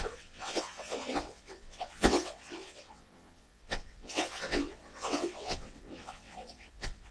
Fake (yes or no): yes